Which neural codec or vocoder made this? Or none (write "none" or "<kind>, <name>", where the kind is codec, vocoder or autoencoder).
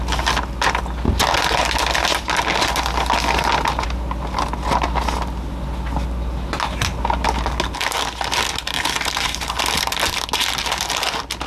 none